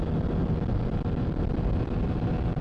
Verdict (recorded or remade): recorded